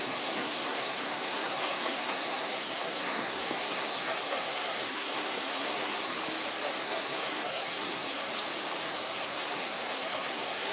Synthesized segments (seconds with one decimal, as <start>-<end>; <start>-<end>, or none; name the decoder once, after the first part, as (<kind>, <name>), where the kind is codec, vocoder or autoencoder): 0.0-6.2 (codec, SNAC); 6.8-8.3; 8.8-10.7